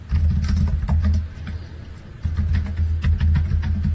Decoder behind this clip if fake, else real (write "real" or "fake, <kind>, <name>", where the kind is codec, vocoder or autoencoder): real